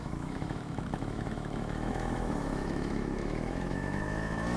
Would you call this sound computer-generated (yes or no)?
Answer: yes